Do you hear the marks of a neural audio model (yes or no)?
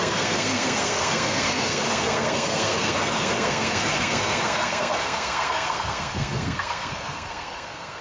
yes